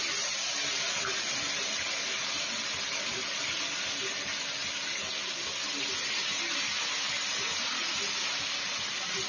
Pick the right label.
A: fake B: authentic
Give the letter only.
B